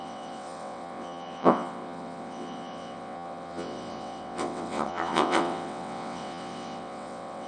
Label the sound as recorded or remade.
remade